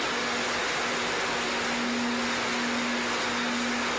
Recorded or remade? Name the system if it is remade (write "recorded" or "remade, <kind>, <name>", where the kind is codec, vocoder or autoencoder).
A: recorded